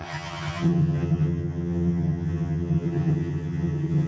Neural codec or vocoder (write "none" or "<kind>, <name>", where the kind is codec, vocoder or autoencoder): vocoder, HiFi-GAN